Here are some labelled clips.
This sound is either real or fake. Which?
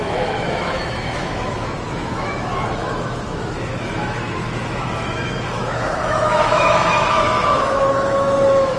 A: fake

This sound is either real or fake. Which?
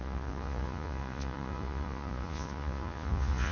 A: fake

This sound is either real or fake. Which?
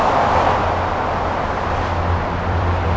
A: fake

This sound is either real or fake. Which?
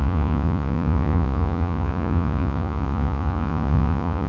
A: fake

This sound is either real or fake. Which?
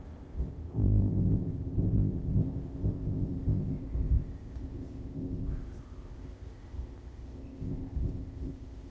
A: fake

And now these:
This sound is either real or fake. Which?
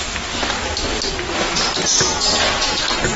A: real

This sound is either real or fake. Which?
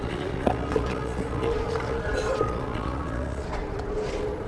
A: fake